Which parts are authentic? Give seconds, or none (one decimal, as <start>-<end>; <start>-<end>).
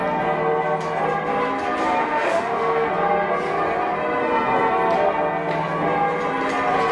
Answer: 0.0-2.0; 2.9-6.9